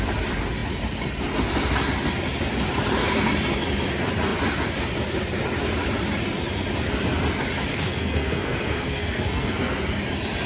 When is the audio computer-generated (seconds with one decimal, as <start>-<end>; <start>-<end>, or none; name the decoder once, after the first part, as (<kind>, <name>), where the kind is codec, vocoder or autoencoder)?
7.7-9.8 (codec, SNAC)

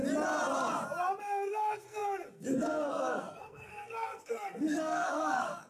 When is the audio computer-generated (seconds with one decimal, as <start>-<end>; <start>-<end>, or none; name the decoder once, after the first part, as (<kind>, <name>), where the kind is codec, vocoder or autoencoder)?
1.2-5.7 (codec, SNAC)

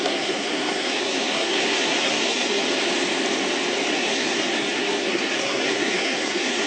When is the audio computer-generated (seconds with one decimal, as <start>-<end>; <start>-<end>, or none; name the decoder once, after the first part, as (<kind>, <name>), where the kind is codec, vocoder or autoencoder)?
0.0-2.6 (codec, SNAC); 3.9-6.7

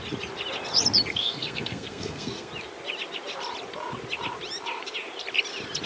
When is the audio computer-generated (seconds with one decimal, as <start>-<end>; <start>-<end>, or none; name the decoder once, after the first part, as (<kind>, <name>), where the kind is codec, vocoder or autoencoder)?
1.1-2.5 (codec, SNAC)